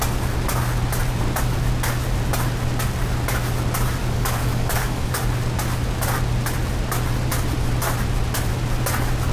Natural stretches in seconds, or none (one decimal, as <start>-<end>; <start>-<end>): 0.0-4.0; 5.2-9.3